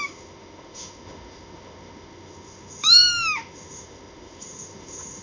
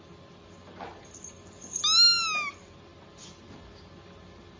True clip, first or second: second